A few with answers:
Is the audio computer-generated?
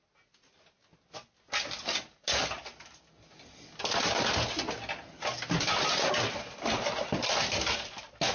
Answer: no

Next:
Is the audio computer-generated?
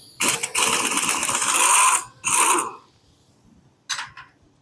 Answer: no